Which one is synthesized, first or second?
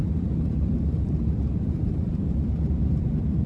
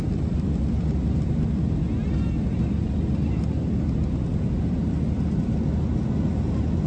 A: first